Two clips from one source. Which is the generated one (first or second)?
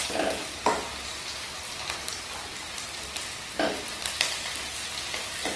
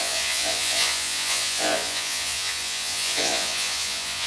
second